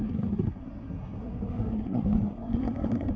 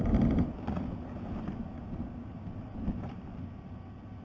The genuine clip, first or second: second